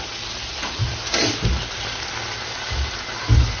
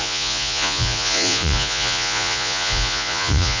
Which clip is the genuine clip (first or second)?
first